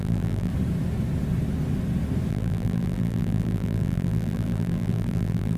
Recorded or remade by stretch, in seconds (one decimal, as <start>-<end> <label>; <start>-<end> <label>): 0.0-0.5 remade; 0.5-2.3 recorded; 2.3-5.6 remade